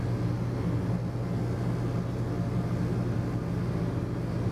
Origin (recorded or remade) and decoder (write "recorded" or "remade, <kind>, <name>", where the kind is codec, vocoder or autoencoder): recorded